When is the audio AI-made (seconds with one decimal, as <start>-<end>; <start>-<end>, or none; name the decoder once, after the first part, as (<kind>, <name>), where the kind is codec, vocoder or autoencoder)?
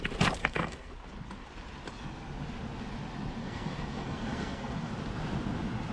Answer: 0.4-0.9 (codec, SNAC); 3.4-4.9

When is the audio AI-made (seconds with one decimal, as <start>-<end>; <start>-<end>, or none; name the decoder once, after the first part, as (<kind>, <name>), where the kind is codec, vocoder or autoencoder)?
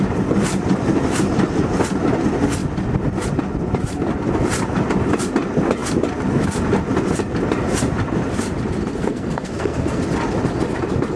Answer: 9.0-10.0 (codec, SNAC)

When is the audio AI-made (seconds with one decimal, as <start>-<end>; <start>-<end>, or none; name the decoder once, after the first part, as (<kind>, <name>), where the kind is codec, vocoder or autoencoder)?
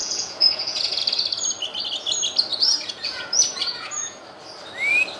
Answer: 0.0-1.0 (vocoder, Vocos); 2.5-4.2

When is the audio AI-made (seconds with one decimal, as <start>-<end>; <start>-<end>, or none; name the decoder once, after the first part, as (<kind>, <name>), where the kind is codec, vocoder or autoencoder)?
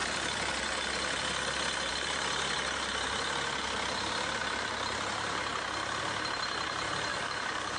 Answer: 7.1-7.8 (codec, DAC)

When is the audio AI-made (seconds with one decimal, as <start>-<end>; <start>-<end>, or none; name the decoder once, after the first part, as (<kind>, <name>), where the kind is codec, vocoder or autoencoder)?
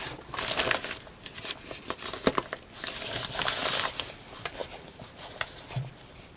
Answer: none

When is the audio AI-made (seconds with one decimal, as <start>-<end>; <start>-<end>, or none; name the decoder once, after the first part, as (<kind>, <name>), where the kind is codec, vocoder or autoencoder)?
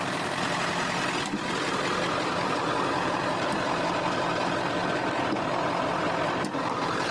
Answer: none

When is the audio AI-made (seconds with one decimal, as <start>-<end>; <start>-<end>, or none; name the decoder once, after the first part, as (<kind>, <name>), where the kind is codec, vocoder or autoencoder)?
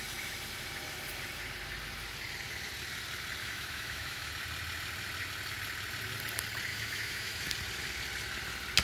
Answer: 3.4-4.3 (autoencoder, DAC-VAE); 6.7-7.5